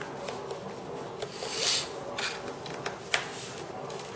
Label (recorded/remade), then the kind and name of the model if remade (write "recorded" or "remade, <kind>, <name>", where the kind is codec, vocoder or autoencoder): recorded